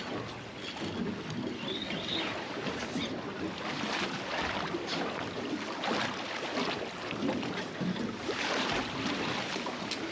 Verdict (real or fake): real